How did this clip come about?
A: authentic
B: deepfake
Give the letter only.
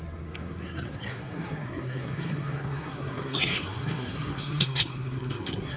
B